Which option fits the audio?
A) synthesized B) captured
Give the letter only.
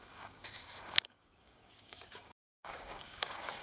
A